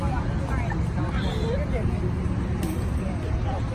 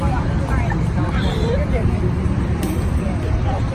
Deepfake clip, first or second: second